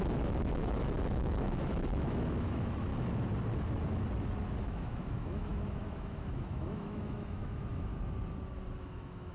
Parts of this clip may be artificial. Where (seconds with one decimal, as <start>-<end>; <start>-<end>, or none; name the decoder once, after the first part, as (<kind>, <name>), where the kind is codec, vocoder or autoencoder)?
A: 0.0-2.9 (autoencoder, DAC-VAE); 4.6-7.9; 8.8-9.3